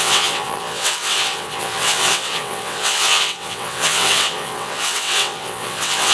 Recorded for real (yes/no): no